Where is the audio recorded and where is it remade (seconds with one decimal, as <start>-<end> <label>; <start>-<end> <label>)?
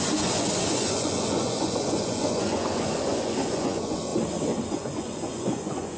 0.0-4.1 remade; 4.1-4.7 recorded; 4.7-6.0 remade